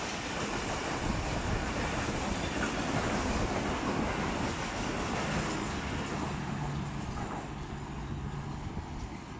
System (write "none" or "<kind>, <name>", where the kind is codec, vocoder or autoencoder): none